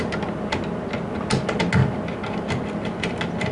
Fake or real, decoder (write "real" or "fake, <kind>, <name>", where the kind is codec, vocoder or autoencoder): real